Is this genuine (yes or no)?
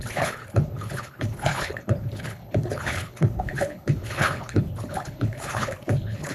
no